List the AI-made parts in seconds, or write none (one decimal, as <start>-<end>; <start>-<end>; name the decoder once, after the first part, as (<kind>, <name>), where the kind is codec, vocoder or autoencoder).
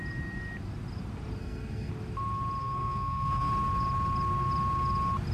1.4-1.9 (codec, SNAC); 2.6-3.5